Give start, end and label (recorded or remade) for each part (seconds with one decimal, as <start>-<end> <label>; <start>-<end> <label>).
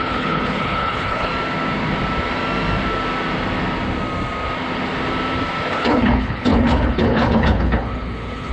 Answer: 0.0-1.3 remade; 1.3-5.7 recorded; 5.7-8.5 remade